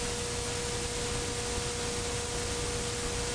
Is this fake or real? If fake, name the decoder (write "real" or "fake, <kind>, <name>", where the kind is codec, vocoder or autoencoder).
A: real